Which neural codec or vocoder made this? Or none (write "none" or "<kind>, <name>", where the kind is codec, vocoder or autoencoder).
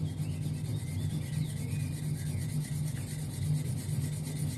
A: none